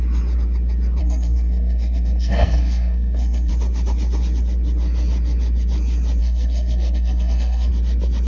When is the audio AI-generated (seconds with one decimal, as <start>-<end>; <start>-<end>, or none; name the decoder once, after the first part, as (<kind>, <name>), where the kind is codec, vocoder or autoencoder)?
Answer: 1.0-3.5 (codec, SNAC); 6.2-7.7